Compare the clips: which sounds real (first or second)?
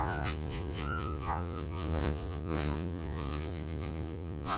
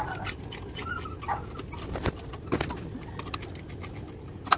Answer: second